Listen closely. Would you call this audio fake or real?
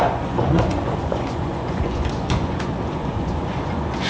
fake